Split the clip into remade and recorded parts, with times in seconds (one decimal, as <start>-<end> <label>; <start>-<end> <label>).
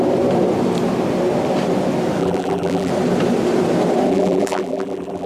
0.0-2.2 recorded; 2.2-2.9 remade; 2.9-4.1 recorded; 4.1-5.3 remade